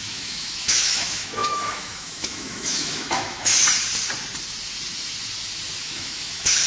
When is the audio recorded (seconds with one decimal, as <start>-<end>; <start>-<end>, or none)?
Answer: 3.5-5.8